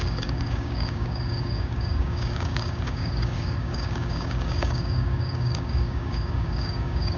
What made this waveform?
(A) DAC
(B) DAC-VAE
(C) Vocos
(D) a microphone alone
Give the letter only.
A